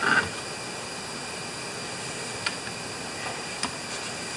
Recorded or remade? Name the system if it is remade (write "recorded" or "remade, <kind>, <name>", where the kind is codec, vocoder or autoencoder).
recorded